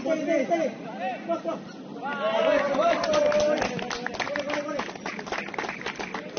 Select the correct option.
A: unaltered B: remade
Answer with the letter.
A